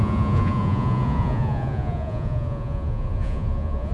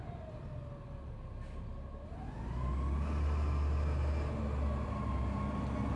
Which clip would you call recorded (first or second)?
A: second